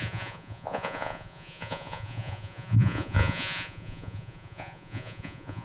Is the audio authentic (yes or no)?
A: no